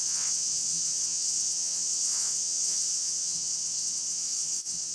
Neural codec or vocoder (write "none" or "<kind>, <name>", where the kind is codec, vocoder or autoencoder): vocoder, WaveNeXt